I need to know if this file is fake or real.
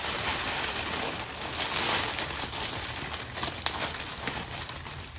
real